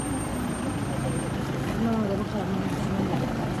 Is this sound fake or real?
real